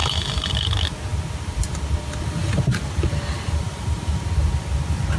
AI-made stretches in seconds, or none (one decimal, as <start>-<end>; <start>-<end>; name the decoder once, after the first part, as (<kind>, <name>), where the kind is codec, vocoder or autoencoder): 2.4-4.2 (vocoder, BigVGAN v2)